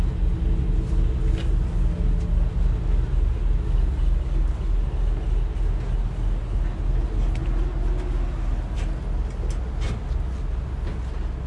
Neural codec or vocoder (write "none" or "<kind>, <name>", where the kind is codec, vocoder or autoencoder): none